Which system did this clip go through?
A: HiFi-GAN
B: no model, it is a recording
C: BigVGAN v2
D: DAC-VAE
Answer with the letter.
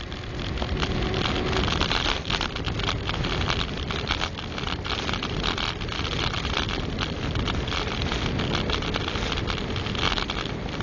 B